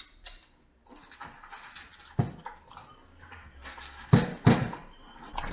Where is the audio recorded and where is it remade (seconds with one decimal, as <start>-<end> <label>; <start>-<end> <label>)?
0.0-5.5 recorded